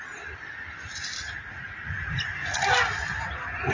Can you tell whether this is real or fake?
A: real